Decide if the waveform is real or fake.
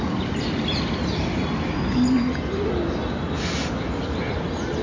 real